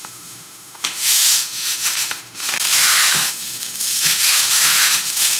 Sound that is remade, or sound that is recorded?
remade